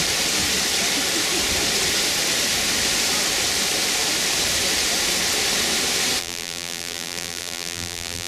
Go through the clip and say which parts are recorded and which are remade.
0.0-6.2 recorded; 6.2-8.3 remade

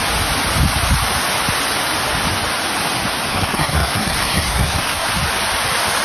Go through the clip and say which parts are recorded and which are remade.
0.0-3.3 recorded; 3.3-5.1 remade; 5.1-6.0 recorded